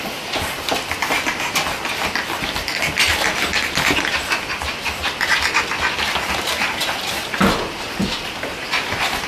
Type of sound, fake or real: real